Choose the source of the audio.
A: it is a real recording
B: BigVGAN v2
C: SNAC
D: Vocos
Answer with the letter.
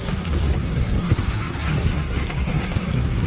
C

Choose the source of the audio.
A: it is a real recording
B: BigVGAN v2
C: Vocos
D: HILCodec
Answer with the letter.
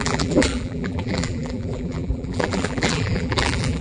B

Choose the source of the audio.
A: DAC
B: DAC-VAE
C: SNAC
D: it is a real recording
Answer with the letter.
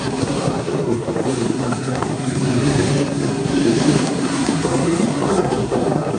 C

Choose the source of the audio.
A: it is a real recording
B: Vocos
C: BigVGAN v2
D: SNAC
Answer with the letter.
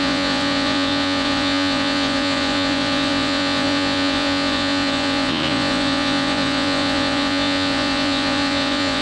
B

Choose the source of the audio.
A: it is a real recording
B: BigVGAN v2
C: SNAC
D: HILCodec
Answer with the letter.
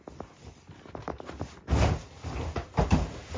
A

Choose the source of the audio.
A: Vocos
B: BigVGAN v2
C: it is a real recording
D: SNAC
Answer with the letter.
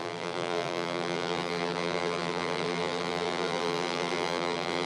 B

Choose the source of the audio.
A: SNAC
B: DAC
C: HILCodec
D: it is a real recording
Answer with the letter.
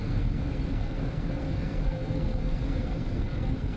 A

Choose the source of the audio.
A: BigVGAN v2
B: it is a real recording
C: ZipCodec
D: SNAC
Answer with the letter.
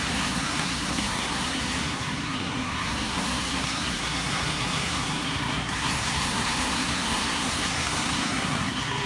D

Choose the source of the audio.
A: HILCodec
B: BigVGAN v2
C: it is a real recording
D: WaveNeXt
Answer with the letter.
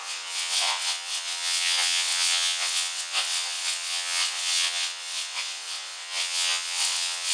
D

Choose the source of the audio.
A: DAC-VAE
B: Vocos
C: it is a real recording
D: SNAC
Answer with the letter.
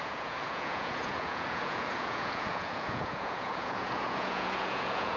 B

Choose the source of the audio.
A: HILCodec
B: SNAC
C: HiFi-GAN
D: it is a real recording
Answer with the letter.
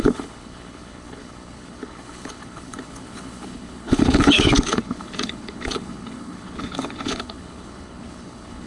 A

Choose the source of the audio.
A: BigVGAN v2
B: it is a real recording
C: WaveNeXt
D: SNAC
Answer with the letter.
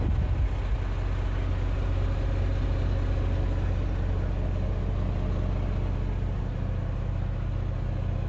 B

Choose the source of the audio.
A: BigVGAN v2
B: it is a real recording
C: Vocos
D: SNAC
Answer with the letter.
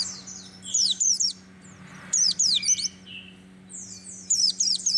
A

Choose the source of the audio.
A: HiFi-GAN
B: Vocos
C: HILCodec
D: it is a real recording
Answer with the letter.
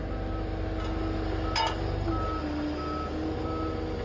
D